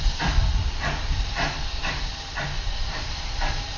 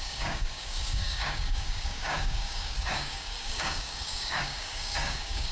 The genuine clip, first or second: first